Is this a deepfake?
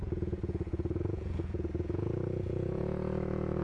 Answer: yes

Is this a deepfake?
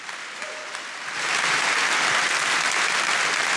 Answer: no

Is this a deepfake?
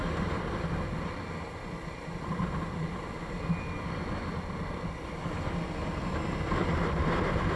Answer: no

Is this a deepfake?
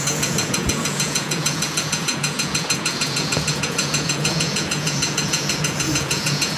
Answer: yes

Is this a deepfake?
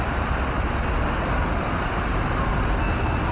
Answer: no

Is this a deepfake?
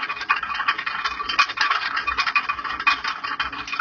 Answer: no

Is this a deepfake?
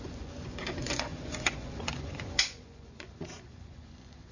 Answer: yes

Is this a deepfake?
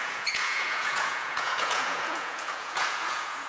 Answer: yes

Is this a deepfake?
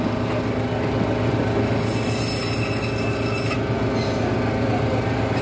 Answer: no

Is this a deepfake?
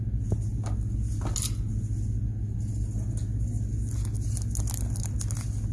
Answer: no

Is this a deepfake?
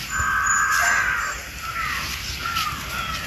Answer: no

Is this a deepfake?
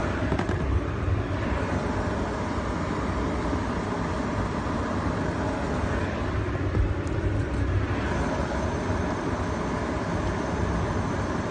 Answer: no